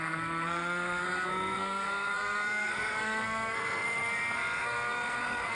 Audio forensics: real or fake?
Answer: fake